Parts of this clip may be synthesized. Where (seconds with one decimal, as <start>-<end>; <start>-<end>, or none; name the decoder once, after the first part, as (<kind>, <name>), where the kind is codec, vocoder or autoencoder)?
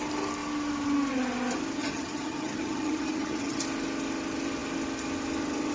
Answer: 1.8-3.6 (vocoder, HiFi-GAN)